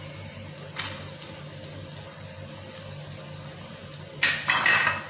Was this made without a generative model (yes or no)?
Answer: yes